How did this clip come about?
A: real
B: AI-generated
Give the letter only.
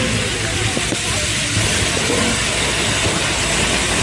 A